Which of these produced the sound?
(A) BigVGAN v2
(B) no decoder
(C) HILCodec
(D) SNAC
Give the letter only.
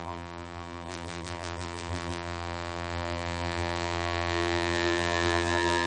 A